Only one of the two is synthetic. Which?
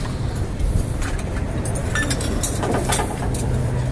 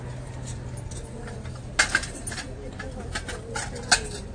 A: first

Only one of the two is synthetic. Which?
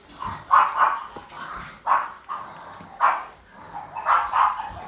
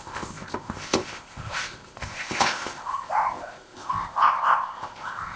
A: second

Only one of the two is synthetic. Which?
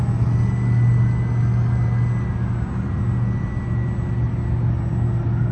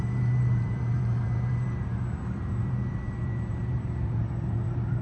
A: second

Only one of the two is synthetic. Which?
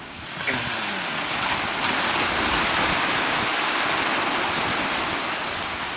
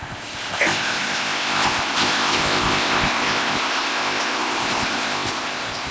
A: second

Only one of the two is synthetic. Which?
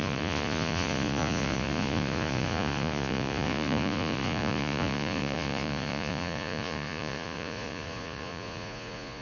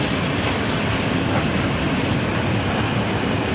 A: first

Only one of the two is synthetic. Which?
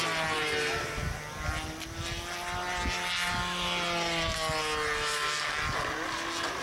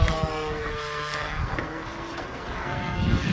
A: second